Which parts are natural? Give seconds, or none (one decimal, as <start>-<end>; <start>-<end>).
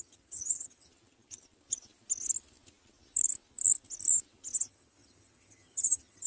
0.9-4.7